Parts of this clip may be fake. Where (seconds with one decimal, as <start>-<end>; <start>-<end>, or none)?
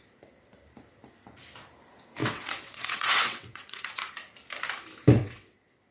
2.2-4.0; 5.2-5.9